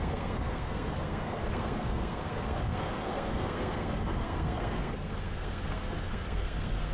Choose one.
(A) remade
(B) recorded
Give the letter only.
A